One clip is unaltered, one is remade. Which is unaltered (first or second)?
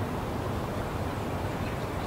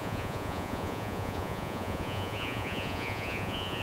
first